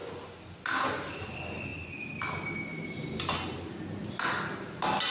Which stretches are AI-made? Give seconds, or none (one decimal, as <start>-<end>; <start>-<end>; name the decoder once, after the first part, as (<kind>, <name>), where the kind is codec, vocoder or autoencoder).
1.7-2.2 (vocoder, BigVGAN v2); 2.7-3.9